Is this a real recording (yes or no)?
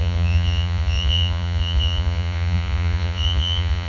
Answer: no